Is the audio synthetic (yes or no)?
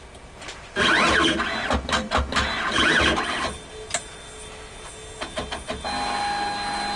no